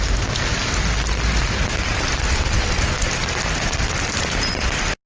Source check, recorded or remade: recorded